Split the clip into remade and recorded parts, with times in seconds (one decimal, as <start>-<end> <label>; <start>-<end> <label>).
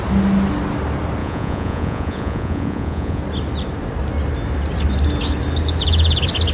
0.0-1.2 recorded; 1.2-3.2 remade; 3.2-6.5 recorded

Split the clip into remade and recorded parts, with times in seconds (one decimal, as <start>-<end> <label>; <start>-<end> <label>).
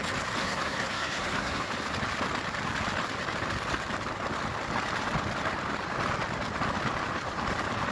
0.0-0.4 recorded; 0.4-1.7 remade; 1.7-7.9 recorded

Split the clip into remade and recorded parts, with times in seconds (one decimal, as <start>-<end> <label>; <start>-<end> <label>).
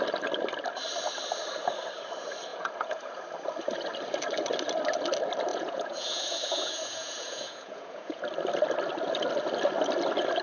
0.0-2.5 recorded; 2.5-3.2 remade; 3.2-5.5 recorded; 5.5-8.2 remade; 8.2-10.4 recorded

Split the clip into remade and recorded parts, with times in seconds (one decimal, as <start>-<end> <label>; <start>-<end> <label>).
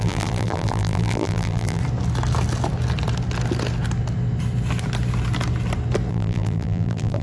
0.0-1.8 remade; 1.8-6.1 recorded; 6.1-7.2 remade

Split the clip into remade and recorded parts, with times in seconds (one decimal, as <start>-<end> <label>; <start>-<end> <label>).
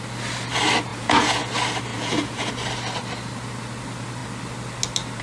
0.0-0.9 recorded; 0.9-1.4 remade; 1.4-1.9 recorded; 1.9-2.5 remade; 2.5-5.2 recorded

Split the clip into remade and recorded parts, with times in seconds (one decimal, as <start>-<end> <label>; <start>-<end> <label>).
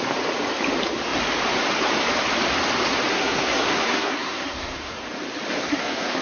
0.0-3.1 recorded; 3.1-5.0 remade; 5.0-5.6 recorded; 5.6-6.2 remade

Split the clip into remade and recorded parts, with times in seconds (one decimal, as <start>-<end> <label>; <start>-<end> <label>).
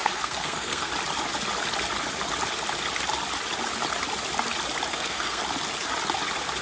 0.0-0.9 remade; 0.9-4.9 recorded; 4.9-5.4 remade; 5.4-6.6 recorded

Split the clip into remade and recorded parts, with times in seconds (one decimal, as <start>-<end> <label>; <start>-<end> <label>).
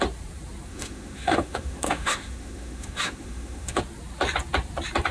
0.0-0.7 recorded; 0.7-3.8 remade; 3.8-5.1 recorded